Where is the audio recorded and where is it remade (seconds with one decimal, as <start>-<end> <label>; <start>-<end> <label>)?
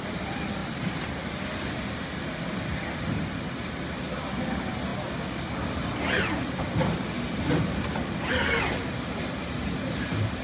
0.0-10.4 recorded